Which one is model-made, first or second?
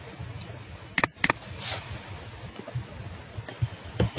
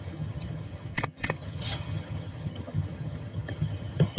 second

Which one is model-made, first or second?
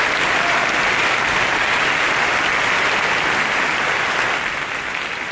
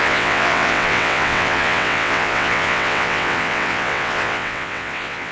second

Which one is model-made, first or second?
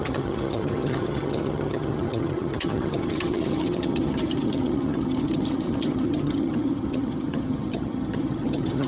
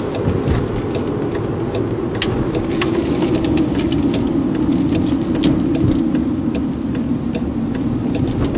first